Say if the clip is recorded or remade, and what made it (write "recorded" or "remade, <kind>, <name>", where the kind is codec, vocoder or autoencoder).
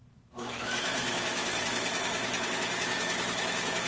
remade, autoencoder, DAC-VAE